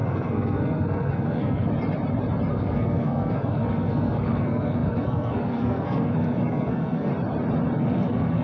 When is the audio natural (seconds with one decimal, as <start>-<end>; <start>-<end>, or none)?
1.7-2.5; 7.1-7.8